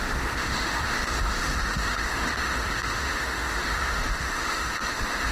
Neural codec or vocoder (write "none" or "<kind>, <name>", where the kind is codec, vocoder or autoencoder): autoencoder, DAC-VAE